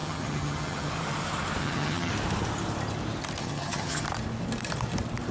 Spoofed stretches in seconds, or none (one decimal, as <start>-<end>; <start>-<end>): 0.0-0.9; 1.6-2.1; 3.4-4.0